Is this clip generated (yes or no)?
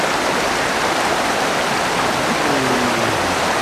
no